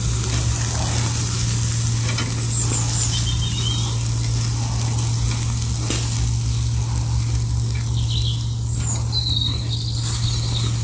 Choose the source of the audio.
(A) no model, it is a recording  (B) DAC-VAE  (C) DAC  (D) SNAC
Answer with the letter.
A